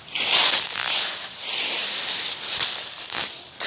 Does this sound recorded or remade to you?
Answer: recorded